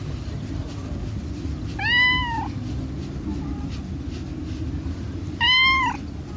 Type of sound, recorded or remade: recorded